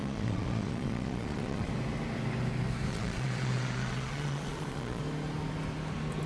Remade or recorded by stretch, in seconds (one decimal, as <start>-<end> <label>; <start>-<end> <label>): 0.0-1.7 remade; 1.7-2.9 recorded; 2.9-5.0 remade; 5.0-6.3 recorded